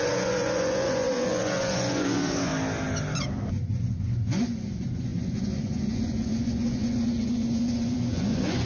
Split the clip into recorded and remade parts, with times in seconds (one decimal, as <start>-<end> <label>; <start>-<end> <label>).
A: 0.0-2.5 remade; 2.5-3.5 recorded; 3.5-8.7 remade